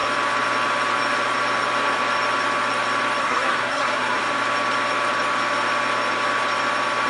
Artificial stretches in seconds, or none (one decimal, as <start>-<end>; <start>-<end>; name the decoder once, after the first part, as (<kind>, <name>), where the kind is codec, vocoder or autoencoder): 3.2-4.2 (codec, SNAC)